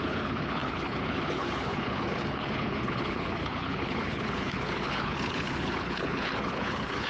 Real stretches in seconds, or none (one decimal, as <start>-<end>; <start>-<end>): none